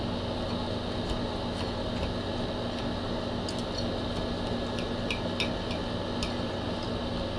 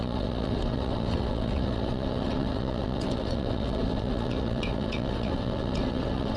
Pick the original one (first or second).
first